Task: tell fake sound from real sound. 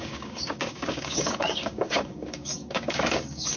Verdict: fake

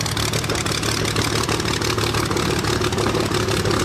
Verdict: real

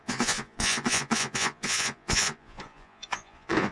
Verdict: fake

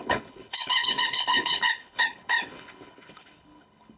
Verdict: fake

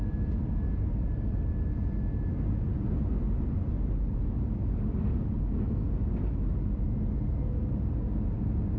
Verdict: real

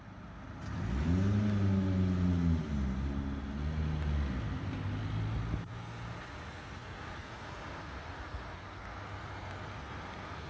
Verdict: real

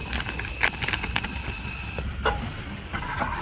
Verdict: real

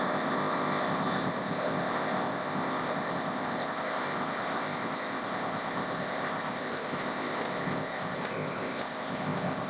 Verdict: fake